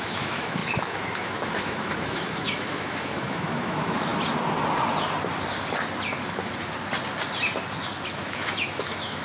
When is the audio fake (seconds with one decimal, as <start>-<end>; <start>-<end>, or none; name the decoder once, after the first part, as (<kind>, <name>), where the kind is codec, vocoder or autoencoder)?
0.0-4.1 (autoencoder, DAC-VAE); 8.1-9.2